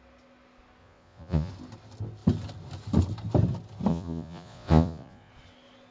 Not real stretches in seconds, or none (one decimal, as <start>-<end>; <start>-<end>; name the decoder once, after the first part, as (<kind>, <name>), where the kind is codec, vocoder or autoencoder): 0.8-1.5 (vocoder, Vocos); 3.9-5.3